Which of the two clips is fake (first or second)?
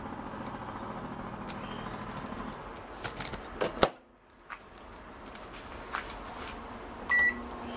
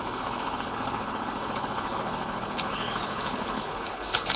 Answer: second